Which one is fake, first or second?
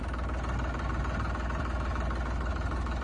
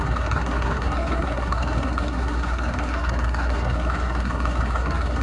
second